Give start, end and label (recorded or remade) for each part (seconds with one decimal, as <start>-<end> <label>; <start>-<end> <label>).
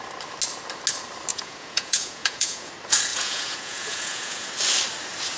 0.0-1.3 recorded; 1.3-2.7 remade; 2.7-3.1 recorded; 3.1-4.5 remade; 4.5-5.4 recorded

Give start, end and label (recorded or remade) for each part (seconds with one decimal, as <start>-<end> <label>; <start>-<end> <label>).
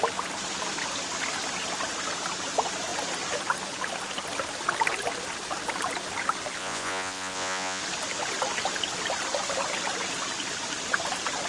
0.0-6.6 recorded; 6.6-7.8 remade; 7.8-11.5 recorded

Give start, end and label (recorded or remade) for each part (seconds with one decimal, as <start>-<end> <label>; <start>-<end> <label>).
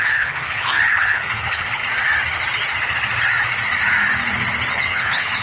0.0-1.8 remade; 1.8-4.7 recorded; 4.7-5.4 remade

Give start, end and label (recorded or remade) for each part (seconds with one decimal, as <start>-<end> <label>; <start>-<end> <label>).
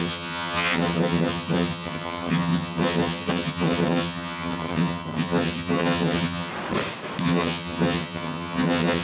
0.0-6.5 remade; 6.5-7.2 recorded; 7.2-9.0 remade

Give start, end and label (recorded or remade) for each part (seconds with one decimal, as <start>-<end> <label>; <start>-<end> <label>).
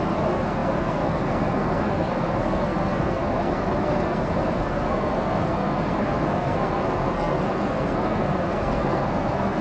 0.0-9.6 remade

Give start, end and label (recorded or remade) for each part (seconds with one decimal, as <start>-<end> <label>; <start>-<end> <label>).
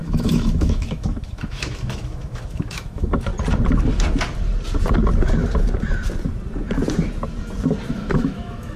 0.0-3.3 remade; 3.3-7.9 recorded; 7.9-8.8 remade